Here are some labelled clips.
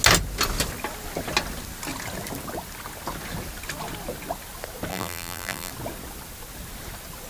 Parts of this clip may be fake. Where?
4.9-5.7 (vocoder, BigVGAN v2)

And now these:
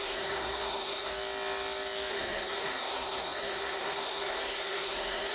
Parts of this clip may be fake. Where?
0.0-1.1 (codec, SNAC); 2.1-5.3

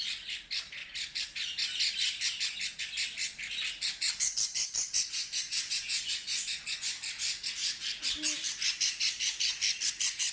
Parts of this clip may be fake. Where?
5.2-6.9 (vocoder, Vocos)